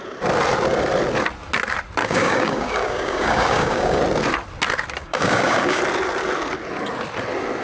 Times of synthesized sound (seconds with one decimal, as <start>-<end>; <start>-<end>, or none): 2.0-4.0; 5.0-5.8